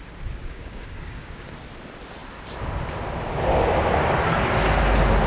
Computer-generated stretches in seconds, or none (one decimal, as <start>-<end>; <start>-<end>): 0.4-1.5